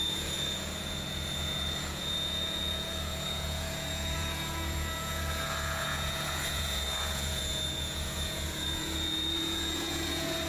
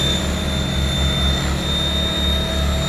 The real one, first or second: second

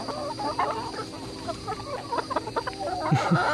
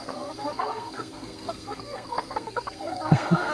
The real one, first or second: first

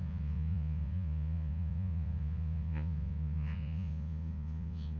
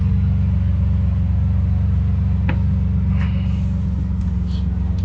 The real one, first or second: second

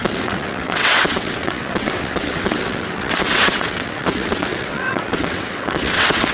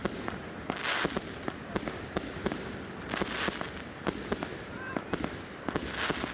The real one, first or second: second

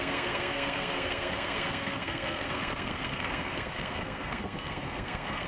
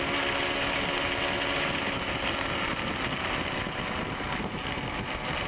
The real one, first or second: second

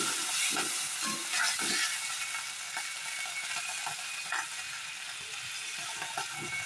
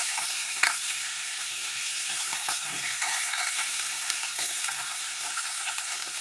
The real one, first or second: first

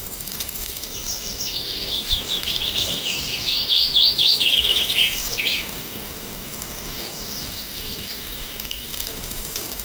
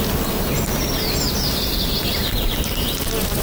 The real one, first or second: second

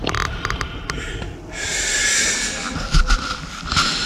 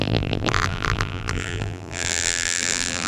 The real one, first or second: first